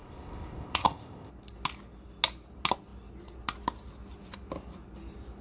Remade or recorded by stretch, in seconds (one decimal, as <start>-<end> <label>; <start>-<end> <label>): 0.0-1.3 remade; 1.3-5.4 recorded